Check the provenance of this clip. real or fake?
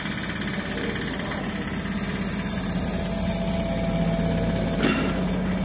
real